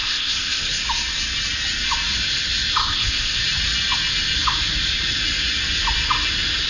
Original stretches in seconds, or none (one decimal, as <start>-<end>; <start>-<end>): 0.6-2.8; 3.4-6.7